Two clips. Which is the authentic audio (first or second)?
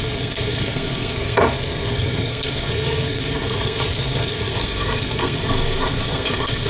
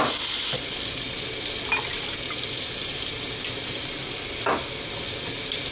second